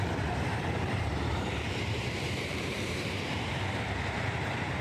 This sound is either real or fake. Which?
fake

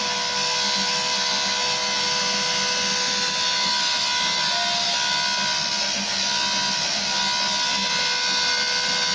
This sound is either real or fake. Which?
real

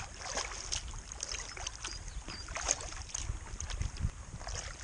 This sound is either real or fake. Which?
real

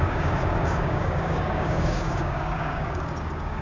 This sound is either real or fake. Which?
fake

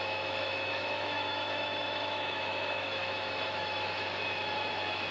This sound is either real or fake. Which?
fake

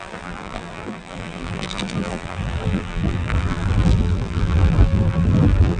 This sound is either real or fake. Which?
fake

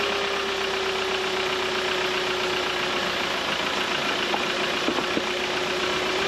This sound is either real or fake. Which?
real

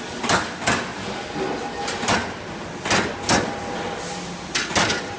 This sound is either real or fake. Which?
real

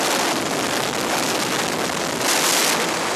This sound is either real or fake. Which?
real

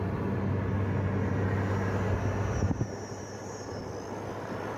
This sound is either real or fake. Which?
real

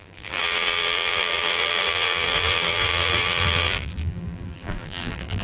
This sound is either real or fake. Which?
fake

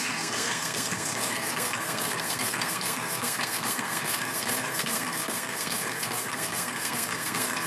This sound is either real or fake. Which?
fake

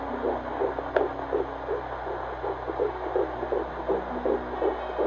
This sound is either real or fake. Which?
real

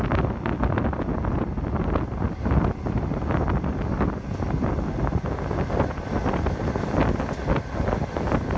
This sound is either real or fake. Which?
real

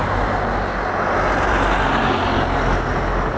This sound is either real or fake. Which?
real